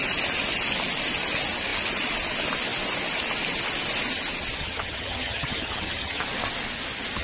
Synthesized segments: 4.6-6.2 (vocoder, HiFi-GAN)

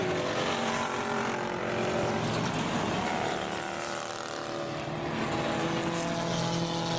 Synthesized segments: 0.0-4.2 (vocoder, BigVGAN v2)